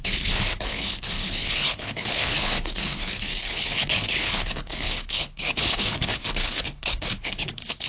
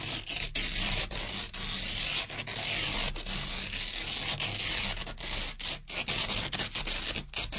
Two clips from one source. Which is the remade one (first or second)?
first